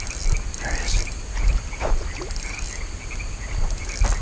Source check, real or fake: real